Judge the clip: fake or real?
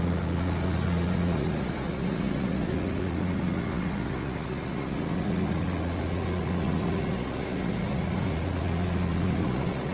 fake